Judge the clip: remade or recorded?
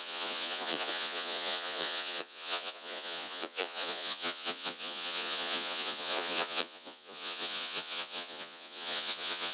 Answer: remade